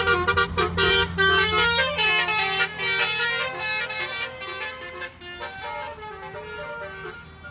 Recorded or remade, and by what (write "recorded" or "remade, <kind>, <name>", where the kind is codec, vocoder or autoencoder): recorded